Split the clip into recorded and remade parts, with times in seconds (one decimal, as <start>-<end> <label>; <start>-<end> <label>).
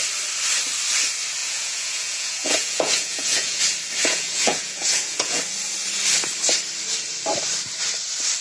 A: 0.0-1.4 recorded; 1.4-3.6 remade; 3.6-4.0 recorded; 4.0-5.4 remade; 5.4-8.4 recorded